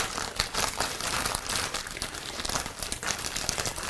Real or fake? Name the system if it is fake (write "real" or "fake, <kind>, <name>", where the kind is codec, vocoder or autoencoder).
fake, vocoder, BigVGAN v2